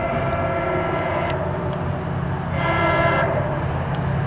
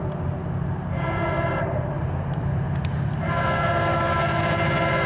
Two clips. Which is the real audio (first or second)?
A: first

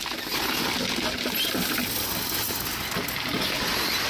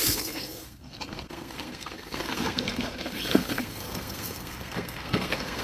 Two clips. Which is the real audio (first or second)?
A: first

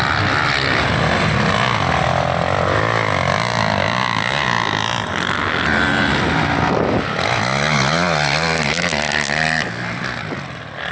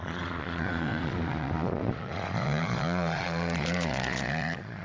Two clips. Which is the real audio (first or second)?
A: first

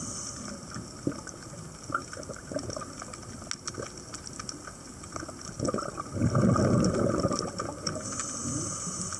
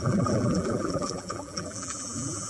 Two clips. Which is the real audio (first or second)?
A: first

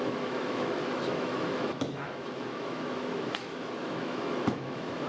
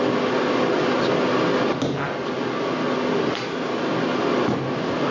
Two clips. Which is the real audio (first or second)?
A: second